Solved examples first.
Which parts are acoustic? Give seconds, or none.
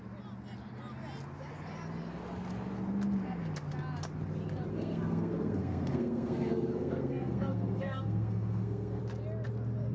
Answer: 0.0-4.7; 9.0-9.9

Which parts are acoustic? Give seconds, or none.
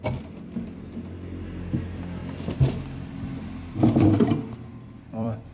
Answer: 0.0-4.7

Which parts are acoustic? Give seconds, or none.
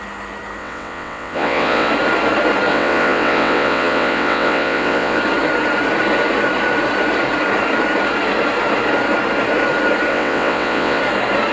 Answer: 0.0-0.6; 1.9-2.7; 5.2-10.1; 11.0-11.5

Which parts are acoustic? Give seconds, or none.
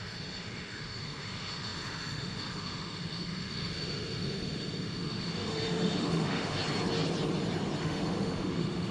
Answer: 6.6-7.8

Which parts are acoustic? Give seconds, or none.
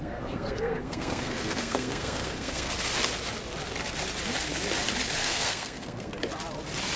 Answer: 2.7-5.2; 6.1-7.0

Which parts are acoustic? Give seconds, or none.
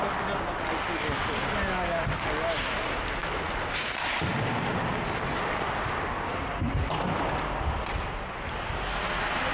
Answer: 0.0-9.5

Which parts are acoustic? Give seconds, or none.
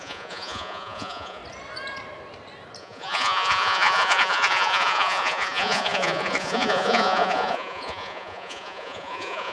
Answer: 1.4-2.8